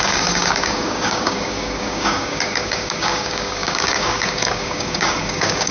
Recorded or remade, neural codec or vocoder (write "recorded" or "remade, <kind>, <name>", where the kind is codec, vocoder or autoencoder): remade, codec, DAC